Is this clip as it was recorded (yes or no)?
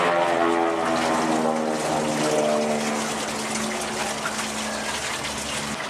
yes